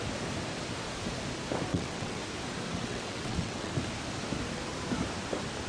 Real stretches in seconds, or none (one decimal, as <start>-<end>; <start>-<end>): 0.0-1.7; 2.2-2.7; 3.7-5.7